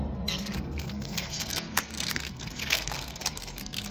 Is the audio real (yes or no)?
no